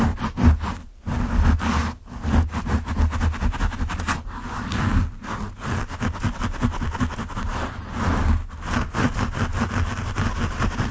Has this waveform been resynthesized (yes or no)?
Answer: no